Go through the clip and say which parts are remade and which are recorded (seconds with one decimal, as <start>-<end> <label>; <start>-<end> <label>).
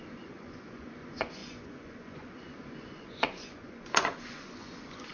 0.0-5.1 remade